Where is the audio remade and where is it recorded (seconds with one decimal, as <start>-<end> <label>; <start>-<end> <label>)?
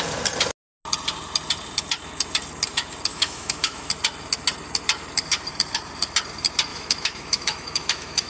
0.0-3.1 recorded; 3.1-3.9 remade; 3.9-6.7 recorded; 6.7-8.3 remade